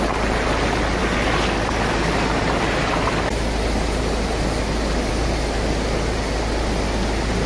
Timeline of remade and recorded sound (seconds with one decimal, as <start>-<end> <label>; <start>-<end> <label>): 0.0-7.5 recorded